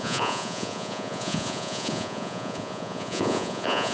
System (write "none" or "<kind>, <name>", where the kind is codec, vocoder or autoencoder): vocoder, Vocos